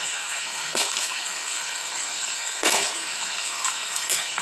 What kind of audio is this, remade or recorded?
remade